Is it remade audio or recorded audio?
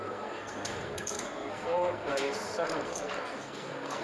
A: remade